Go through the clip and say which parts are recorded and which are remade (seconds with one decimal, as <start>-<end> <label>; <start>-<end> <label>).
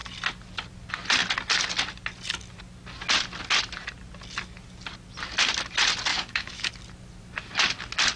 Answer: 0.0-6.1 recorded; 6.1-6.7 remade; 6.7-8.2 recorded